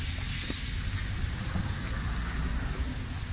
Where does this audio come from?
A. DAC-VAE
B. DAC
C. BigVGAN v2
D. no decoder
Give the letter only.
D